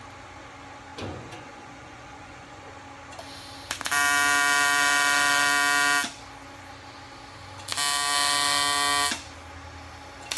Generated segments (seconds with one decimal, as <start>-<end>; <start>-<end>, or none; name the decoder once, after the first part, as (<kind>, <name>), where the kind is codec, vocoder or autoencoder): 0.9-2.7 (vocoder, Vocos)